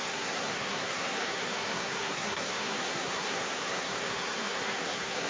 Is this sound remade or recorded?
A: remade